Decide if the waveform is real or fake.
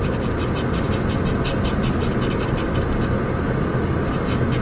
real